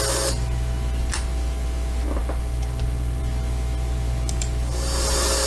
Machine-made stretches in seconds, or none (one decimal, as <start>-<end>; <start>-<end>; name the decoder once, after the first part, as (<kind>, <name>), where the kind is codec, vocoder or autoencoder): none

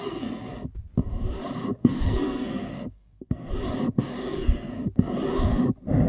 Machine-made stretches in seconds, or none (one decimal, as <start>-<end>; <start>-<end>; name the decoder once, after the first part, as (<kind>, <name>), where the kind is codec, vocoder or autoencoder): 0.0-0.5 (codec, SNAC); 1.8-3.5; 4.2-4.7